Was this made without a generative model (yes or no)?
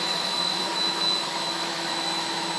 no